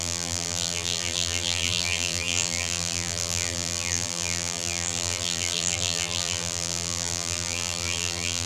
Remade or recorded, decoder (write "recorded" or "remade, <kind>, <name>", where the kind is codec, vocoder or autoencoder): remade, vocoder, BigVGAN v2